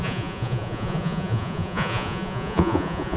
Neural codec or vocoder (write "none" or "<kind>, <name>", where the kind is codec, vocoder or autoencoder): vocoder, Vocos